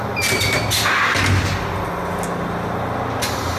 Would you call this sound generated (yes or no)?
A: no